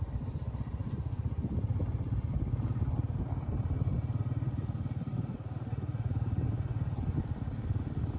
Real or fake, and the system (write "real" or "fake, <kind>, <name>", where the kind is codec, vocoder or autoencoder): real